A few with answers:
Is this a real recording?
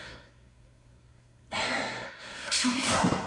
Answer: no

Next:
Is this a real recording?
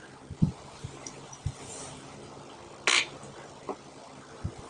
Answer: yes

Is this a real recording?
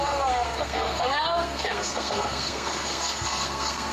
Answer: no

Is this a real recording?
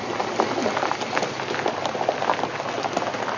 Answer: yes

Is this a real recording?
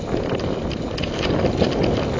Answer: yes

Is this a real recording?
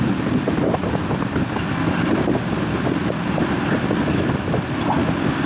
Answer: yes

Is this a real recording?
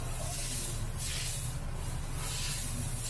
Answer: yes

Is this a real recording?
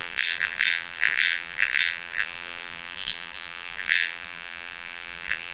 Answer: no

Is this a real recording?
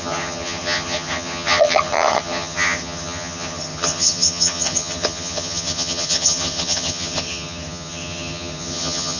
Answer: no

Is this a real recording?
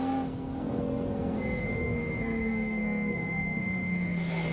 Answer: no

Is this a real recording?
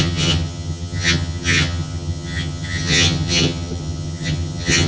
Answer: no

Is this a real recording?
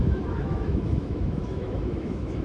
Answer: no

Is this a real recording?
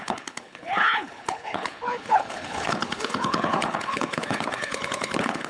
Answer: no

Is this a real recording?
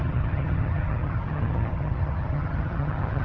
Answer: no